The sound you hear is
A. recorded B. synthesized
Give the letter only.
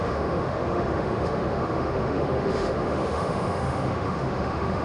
B